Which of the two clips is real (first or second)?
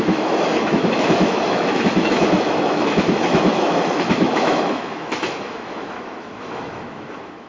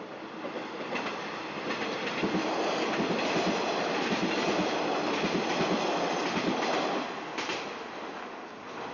second